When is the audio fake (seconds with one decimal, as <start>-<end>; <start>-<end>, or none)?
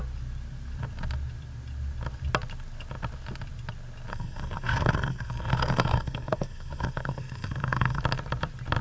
4.1-8.0